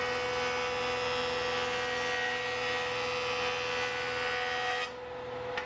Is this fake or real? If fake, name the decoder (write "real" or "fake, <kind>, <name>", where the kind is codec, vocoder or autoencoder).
real